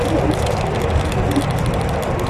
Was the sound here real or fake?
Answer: real